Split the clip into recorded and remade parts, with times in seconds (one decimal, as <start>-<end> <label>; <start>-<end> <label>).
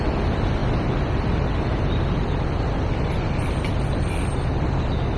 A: 0.0-5.2 recorded